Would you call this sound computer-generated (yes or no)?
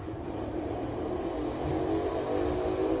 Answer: no